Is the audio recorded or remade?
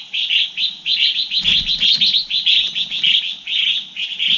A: recorded